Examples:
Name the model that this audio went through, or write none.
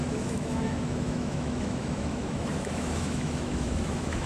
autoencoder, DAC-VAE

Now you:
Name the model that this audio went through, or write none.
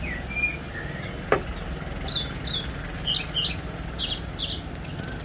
none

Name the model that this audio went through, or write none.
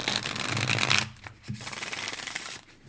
none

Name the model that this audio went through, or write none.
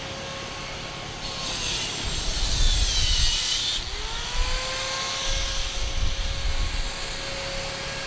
none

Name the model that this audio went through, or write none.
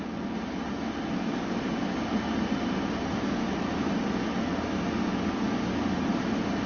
none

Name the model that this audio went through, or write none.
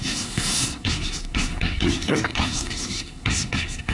codec, SNAC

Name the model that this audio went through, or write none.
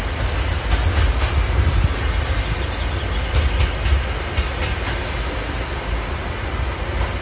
none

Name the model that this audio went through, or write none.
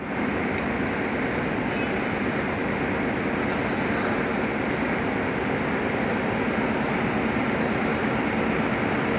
none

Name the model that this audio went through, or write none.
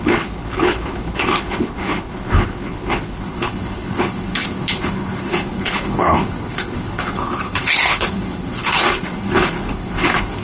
codec, HILCodec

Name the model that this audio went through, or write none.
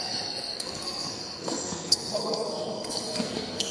codec, SNAC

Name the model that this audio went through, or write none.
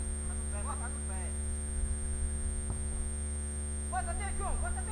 none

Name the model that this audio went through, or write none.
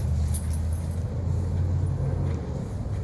none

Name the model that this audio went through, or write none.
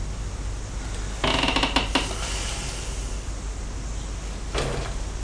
none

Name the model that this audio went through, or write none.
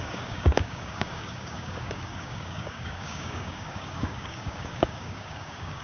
codec, DAC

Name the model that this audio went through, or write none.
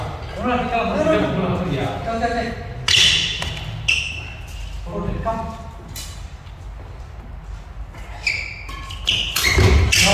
none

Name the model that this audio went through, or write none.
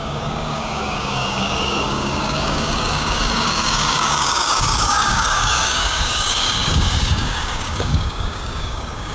codec, DAC